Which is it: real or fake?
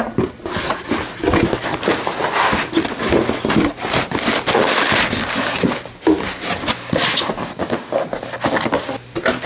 real